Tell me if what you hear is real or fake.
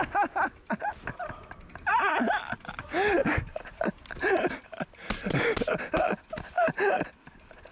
real